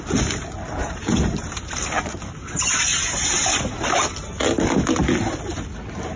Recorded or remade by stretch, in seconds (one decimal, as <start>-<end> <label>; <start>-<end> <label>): 0.0-0.8 recorded; 0.8-3.8 remade; 3.8-6.2 recorded